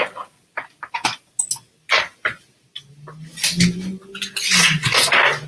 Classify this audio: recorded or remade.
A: recorded